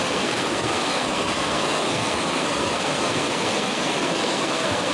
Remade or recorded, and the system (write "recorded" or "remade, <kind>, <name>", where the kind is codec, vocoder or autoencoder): remade, codec, SNAC